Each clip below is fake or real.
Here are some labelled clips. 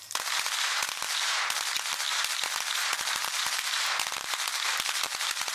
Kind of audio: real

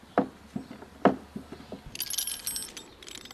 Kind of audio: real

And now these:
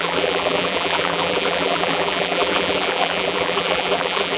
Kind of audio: fake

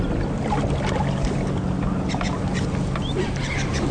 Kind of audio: real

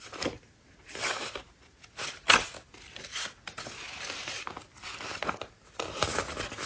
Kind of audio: real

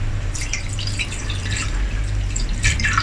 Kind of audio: fake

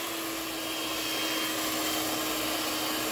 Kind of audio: real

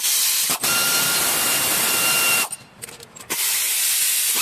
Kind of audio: fake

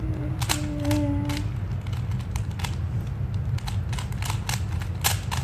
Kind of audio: real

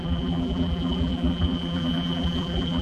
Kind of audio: fake